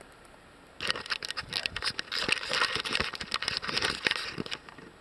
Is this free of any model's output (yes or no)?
yes